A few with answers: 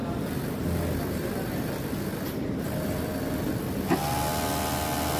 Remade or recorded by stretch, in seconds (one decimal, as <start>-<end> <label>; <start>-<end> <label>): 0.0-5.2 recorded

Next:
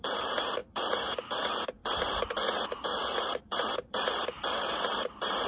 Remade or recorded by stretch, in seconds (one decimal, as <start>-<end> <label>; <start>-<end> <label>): 0.0-5.5 remade

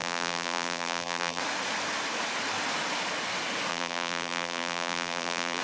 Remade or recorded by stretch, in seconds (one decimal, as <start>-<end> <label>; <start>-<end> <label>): 0.0-1.4 remade; 1.4-3.7 recorded; 3.7-5.6 remade

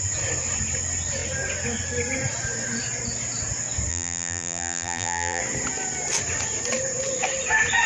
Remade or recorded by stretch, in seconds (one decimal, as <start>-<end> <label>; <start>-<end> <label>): 0.0-3.9 recorded; 3.9-5.4 remade; 5.4-7.9 recorded